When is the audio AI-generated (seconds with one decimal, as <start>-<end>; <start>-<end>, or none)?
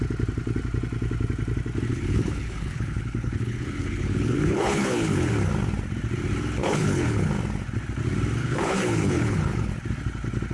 1.9-5.3; 6.6-7.3; 8.4-9.7